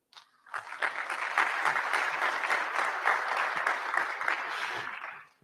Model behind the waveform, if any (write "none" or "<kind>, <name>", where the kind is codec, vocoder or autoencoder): vocoder, BigVGAN v2